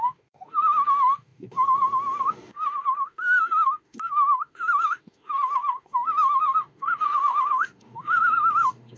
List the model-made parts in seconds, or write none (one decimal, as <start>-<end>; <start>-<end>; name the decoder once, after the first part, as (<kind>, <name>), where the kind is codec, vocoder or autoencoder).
0.0-9.0 (autoencoder, DAC-VAE)